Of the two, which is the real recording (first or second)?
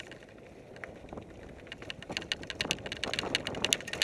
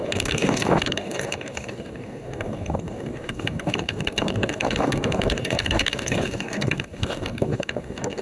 first